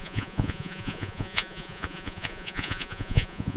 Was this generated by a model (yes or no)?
yes